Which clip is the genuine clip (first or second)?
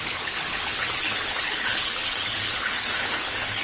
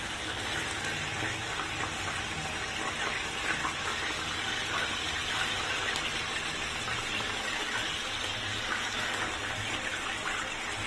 second